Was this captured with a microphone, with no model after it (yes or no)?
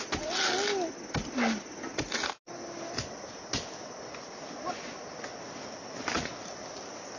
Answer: yes